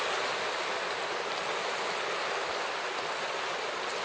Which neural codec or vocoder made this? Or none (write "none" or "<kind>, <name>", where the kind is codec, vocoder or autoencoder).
none